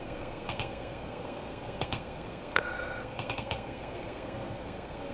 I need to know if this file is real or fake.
fake